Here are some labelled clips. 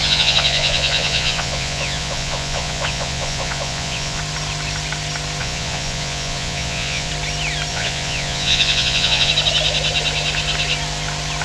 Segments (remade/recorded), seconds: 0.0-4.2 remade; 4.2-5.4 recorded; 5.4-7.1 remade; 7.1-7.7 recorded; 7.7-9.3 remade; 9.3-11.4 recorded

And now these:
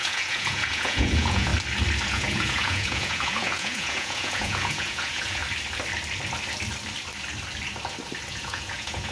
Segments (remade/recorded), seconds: 0.0-1.5 remade; 1.5-2.1 recorded; 2.1-5.4 remade; 5.4-8.3 recorded; 8.3-9.1 remade

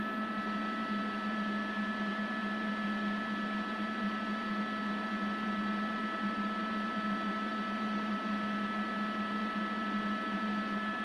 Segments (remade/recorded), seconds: 0.0-11.0 recorded

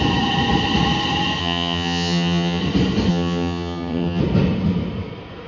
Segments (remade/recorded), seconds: 0.0-1.4 recorded; 1.4-2.6 remade; 2.6-3.1 recorded; 3.1-4.2 remade; 4.2-5.5 recorded

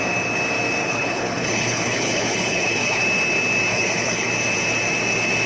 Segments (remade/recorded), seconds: 0.0-0.8 recorded; 0.8-3.0 remade; 3.0-3.7 recorded; 3.7-4.3 remade; 4.3-5.5 recorded